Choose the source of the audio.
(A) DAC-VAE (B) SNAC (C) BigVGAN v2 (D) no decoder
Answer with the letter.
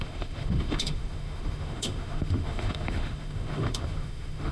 A